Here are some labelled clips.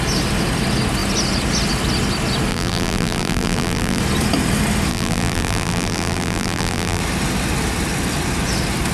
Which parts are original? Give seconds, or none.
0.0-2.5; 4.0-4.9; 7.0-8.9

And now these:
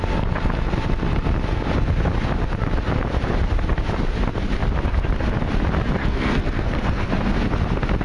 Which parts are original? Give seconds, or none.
0.0-6.0; 7.1-8.0

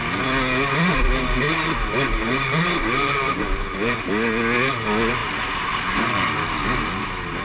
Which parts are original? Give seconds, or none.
0.0-2.2; 4.1-5.2; 6.3-7.4

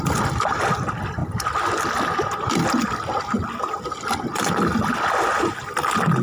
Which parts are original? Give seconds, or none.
0.0-6.2

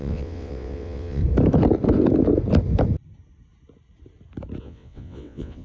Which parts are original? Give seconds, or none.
1.2-4.6

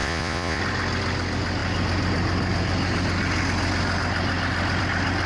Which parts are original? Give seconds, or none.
0.6-5.3

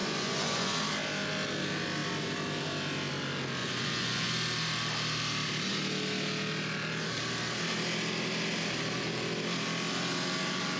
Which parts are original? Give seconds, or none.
0.8-3.6; 4.3-10.8

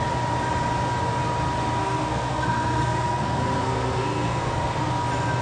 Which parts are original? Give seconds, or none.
0.0-1.8; 4.9-5.4